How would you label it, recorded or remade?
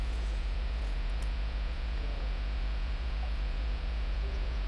remade